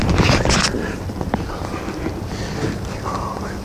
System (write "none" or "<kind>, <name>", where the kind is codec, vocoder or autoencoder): vocoder, BigVGAN v2